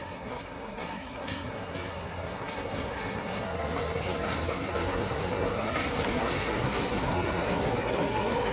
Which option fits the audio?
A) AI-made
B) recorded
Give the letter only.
A